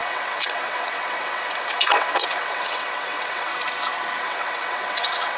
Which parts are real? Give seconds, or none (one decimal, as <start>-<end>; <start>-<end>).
3.5-4.2

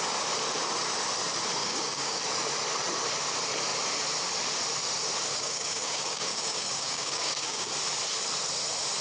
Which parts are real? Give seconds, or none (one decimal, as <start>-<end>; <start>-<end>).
0.0-1.6; 2.2-5.3; 7.7-9.0

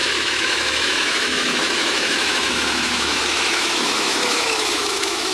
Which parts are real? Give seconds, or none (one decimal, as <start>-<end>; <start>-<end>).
none

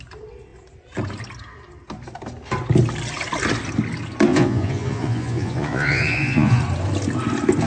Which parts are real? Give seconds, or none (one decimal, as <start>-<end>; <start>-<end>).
0.0-4.3; 6.6-7.7

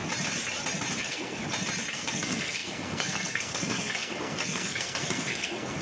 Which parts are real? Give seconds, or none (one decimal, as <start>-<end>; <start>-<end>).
0.0-1.0; 1.4-1.9

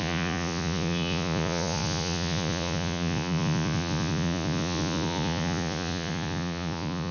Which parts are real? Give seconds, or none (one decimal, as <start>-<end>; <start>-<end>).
none

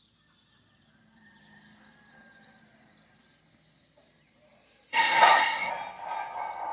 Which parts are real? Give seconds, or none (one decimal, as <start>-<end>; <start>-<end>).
0.0-4.9; 5.7-6.7

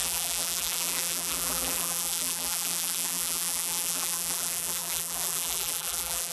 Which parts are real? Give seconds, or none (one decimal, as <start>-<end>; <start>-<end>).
none